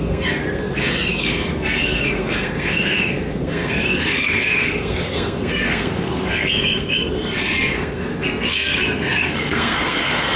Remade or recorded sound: remade